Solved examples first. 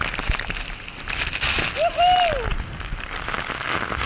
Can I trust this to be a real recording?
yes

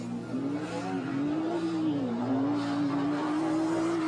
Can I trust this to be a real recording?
yes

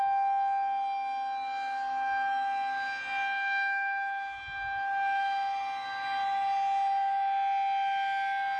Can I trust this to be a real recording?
yes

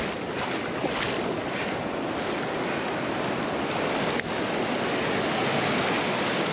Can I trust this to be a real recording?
yes